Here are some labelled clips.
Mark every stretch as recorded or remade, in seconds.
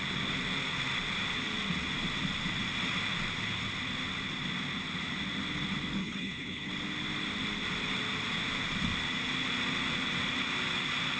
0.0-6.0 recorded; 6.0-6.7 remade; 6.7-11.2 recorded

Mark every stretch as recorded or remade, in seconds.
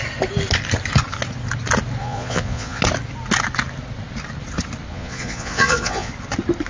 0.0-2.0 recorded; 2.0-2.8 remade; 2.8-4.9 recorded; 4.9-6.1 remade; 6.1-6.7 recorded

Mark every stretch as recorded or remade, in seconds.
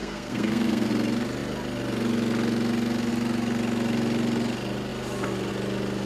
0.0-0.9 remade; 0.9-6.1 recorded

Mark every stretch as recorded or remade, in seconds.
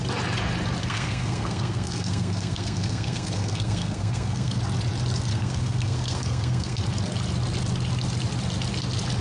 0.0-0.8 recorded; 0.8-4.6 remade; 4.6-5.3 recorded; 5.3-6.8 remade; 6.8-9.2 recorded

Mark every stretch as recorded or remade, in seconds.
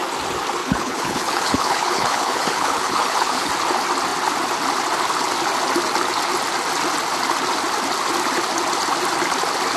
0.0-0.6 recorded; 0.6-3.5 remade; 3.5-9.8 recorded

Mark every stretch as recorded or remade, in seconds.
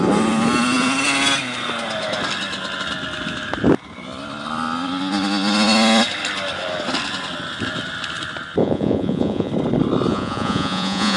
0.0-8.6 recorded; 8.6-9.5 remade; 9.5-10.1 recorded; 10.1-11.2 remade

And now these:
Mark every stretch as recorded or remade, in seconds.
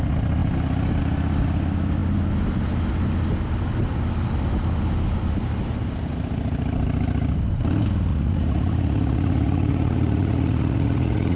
0.0-8.1 recorded; 8.1-11.4 remade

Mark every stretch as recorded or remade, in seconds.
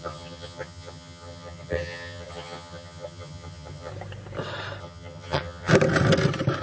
0.0-3.9 remade; 3.9-4.8 recorded; 4.8-5.7 remade; 5.7-6.6 recorded